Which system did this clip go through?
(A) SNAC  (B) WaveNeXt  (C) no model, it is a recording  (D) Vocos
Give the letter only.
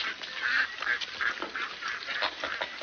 C